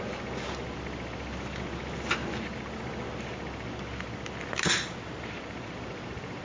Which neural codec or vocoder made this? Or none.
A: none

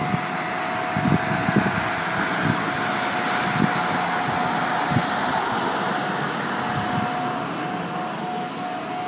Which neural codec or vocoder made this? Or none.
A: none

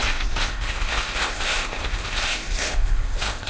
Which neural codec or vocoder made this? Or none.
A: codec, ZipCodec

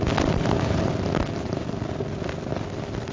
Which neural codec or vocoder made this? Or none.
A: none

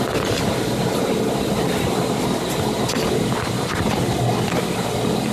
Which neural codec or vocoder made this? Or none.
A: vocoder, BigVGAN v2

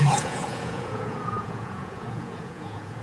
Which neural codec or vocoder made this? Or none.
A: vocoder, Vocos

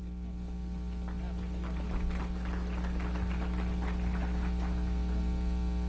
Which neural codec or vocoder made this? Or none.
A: none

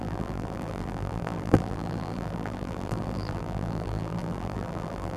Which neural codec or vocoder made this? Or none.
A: vocoder, BigVGAN v2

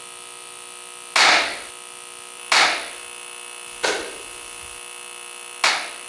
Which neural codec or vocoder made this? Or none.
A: none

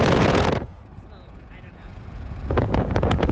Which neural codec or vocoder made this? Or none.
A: vocoder, Vocos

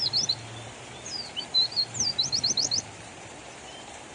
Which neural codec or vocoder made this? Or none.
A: none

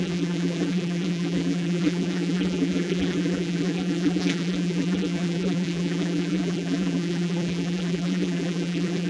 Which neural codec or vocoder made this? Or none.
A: vocoder, BigVGAN v2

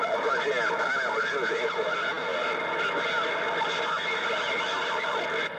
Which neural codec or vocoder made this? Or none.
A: none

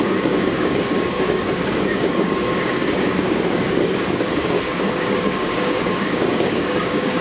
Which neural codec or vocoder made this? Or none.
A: codec, DAC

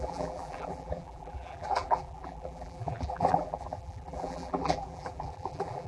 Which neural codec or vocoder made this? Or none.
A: vocoder, BigVGAN v2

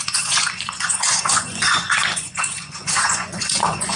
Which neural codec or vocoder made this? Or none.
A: vocoder, Vocos